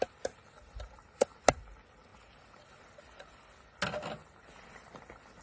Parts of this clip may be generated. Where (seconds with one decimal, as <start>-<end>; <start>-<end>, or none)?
none